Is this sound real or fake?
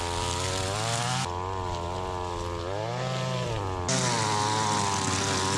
real